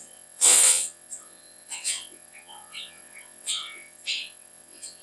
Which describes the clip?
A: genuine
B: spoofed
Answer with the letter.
B